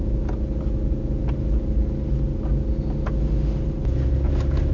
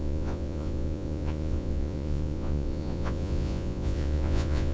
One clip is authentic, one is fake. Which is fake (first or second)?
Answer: second